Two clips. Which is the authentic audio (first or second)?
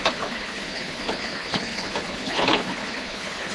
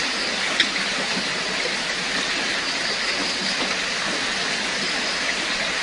second